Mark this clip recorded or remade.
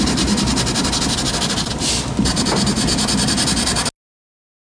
recorded